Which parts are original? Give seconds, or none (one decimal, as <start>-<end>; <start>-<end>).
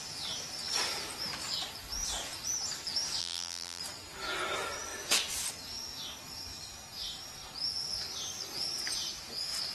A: 0.0-3.2; 3.8-9.7